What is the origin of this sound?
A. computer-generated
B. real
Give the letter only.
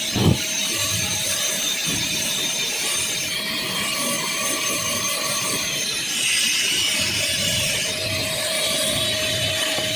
A